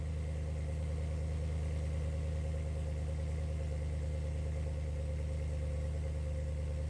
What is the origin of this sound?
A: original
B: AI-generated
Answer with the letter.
A